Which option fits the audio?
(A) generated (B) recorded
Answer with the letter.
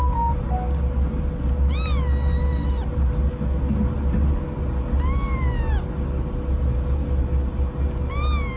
B